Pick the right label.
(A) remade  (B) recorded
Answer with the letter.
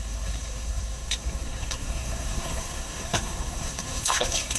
A